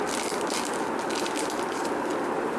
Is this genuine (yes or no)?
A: yes